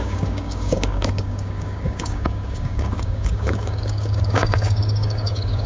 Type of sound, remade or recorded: remade